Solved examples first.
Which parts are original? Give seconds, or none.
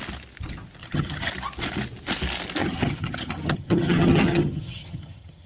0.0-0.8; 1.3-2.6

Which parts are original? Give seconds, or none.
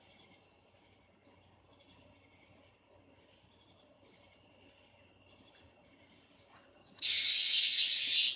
0.0-6.8; 7.4-8.4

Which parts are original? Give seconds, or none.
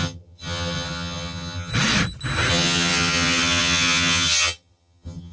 1.7-2.5